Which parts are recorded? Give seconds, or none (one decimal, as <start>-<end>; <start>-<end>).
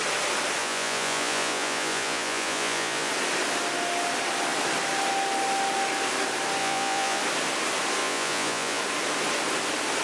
0.0-0.6; 3.1-6.6; 7.2-8.0; 8.8-10.0